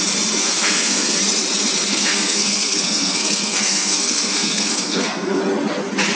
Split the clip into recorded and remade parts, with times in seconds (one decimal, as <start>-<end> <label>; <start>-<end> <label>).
0.0-0.4 recorded; 0.4-1.2 remade; 1.2-1.9 recorded; 1.9-5.4 remade; 5.4-6.1 recorded